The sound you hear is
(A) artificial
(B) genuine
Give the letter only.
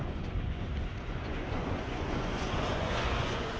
A